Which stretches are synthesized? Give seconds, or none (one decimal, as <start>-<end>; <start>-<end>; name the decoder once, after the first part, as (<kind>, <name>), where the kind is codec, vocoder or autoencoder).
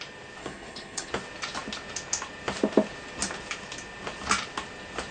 0.4-1.1 (codec, HILCodec)